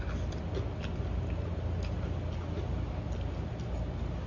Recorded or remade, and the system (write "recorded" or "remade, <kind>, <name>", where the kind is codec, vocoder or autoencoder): recorded